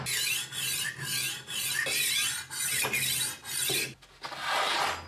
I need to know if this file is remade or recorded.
recorded